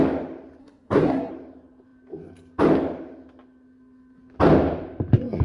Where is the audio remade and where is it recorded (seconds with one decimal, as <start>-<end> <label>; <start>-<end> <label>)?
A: 0.0-0.6 recorded; 0.6-1.3 remade; 1.3-5.4 recorded